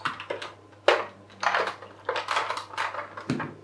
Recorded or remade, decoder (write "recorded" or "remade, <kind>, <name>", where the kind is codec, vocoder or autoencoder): recorded